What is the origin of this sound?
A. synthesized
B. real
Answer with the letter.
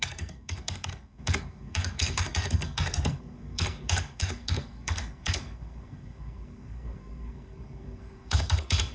A